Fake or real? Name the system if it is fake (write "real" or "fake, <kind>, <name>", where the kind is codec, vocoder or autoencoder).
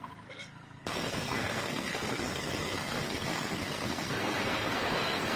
fake, codec, SNAC